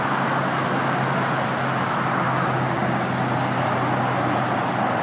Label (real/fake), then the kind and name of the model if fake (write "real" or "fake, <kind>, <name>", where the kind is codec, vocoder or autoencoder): real